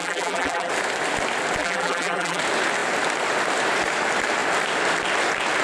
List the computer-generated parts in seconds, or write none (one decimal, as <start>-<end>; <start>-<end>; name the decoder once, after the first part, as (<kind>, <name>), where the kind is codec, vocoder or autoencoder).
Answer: 0.0-0.7 (vocoder, BigVGAN v2); 1.6-2.4